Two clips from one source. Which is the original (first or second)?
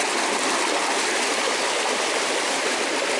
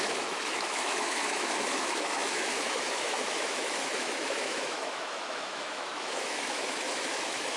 first